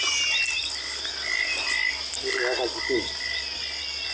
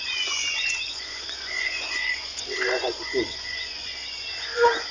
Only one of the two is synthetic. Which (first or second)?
second